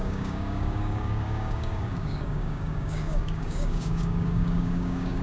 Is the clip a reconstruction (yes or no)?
yes